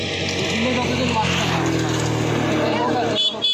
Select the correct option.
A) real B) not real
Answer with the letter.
A